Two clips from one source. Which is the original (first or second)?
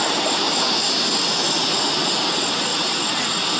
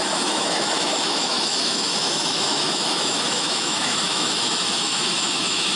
first